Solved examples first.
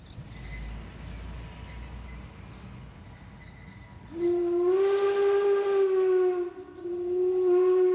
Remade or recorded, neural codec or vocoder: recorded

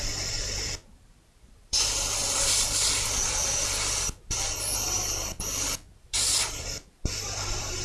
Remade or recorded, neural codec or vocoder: remade, vocoder, BigVGAN v2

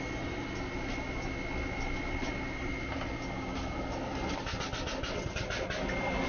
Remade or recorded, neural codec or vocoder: recorded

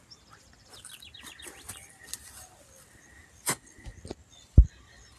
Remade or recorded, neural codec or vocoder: recorded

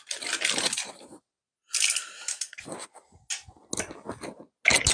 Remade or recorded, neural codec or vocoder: recorded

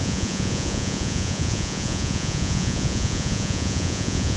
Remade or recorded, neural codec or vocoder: remade, vocoder, Vocos